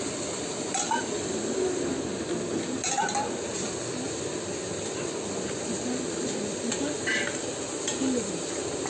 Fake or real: real